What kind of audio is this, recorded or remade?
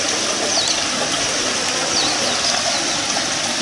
recorded